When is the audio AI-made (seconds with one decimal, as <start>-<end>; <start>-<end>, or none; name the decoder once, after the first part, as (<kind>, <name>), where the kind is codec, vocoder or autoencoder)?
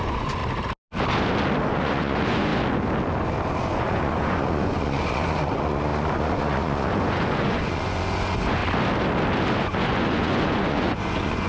0.0-0.4 (vocoder, Vocos); 1.7-2.5; 3.6-8.6; 9.6-11.5